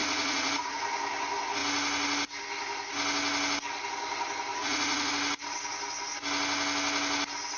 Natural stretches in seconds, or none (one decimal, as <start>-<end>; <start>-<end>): 0.8-4.5; 5.1-7.6